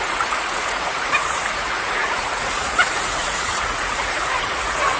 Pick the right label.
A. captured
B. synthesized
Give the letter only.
B